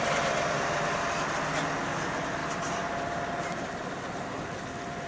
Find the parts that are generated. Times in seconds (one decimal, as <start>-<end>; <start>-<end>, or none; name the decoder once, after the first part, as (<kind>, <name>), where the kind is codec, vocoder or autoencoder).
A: none